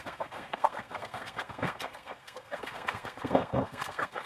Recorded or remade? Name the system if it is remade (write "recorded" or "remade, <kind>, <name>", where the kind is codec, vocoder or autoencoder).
remade, codec, SNAC